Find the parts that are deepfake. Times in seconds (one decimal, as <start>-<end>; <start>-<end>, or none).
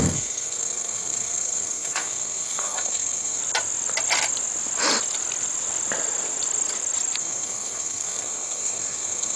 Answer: 0.0-3.4; 7.2-9.4